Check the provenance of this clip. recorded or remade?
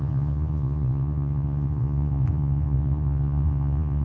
remade